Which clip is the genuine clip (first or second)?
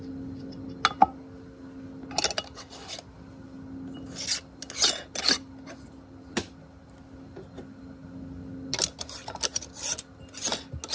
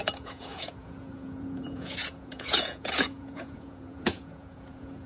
first